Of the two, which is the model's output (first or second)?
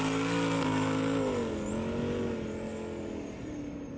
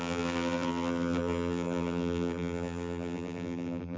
second